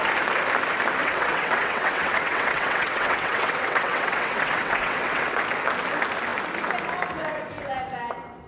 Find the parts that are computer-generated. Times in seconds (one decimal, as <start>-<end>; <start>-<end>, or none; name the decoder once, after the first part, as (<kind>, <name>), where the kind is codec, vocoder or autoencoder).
1.0-5.4 (vocoder, WaveNeXt)